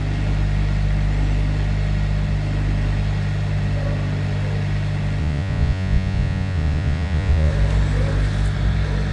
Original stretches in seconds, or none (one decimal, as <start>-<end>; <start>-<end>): 0.0-5.2; 7.5-9.1